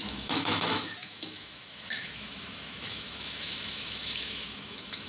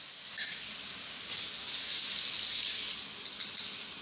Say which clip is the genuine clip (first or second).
second